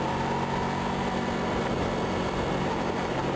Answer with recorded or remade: recorded